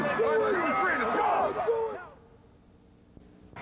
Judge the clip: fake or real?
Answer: real